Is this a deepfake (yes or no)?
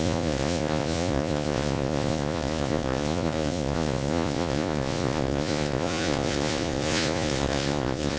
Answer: yes